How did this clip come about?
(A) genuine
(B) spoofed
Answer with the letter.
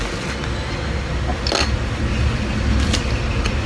A